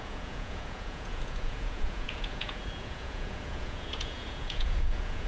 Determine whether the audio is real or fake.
fake